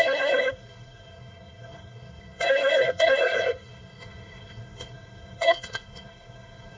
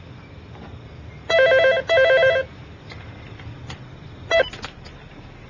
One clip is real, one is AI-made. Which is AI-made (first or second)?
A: first